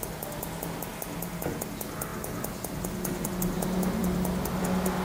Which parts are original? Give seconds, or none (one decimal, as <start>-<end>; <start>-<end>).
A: 0.0-5.0